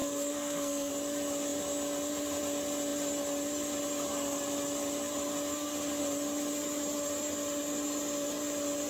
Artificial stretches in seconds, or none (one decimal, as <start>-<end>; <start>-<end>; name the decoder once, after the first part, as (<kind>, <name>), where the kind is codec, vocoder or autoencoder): 0.0-0.9 (codec, SNAC)